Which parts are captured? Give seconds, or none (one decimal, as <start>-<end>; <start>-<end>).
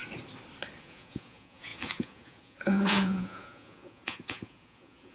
0.0-0.8